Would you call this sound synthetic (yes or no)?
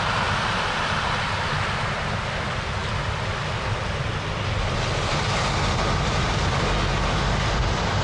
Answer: no